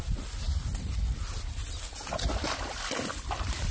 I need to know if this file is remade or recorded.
recorded